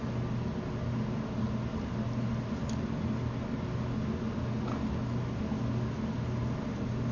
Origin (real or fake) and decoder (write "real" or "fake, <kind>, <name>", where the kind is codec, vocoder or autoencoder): real